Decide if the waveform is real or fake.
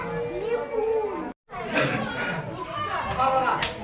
real